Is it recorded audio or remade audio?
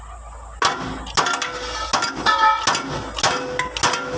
recorded